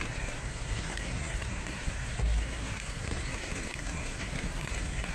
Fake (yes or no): yes